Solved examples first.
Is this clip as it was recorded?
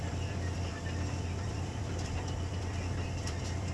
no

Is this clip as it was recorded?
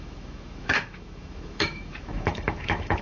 no